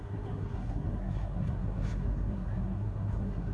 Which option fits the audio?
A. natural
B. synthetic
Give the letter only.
B